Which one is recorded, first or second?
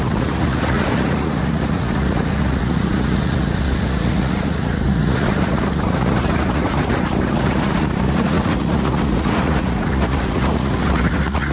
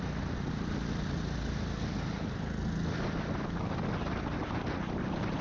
second